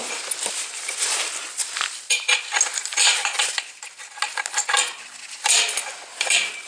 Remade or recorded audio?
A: recorded